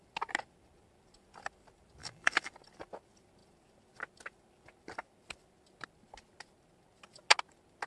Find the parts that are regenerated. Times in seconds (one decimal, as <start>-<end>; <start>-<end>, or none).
2.0-2.5